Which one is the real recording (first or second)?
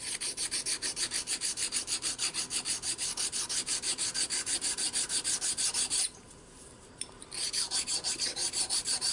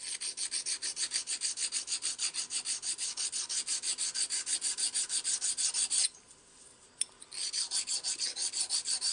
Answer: second